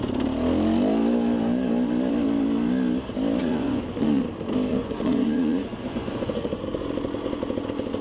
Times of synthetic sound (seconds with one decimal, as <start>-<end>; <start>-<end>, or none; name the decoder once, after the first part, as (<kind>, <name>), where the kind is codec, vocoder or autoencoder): 3.4-4.2 (vocoder, Vocos); 4.7-6.6